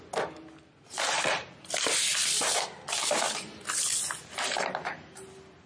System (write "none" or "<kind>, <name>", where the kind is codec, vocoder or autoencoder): none